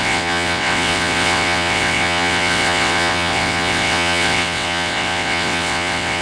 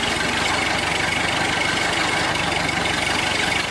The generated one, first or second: first